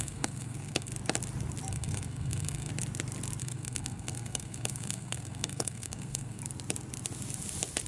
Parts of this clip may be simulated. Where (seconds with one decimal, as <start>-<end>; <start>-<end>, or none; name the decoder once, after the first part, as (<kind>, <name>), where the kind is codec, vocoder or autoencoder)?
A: 0.0-0.9 (codec, SNAC); 1.7-2.7; 3.4-6.4